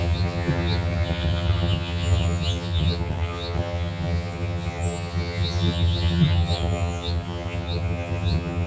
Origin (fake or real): fake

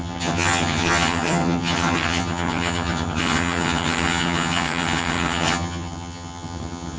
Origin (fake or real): fake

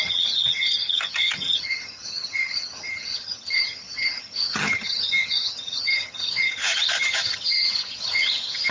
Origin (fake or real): fake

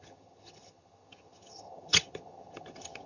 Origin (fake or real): fake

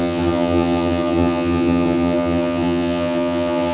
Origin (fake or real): fake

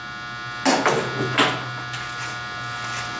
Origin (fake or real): real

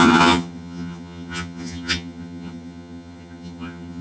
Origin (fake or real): fake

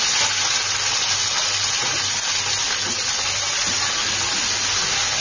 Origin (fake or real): real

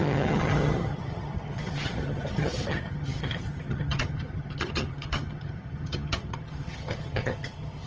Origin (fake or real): fake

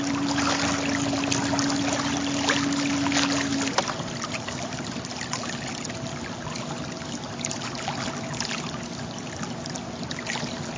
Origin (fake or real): real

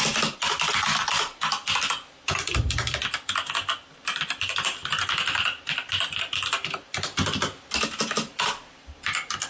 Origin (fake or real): real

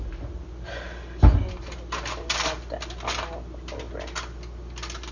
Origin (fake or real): real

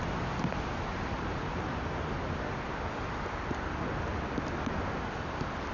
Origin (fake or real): real